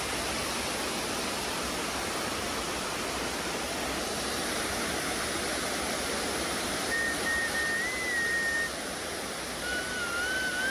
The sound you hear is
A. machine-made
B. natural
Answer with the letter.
B